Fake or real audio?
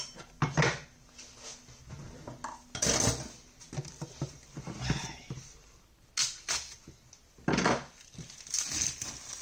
real